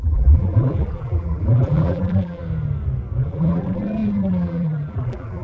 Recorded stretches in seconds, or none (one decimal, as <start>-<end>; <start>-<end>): 2.4-3.2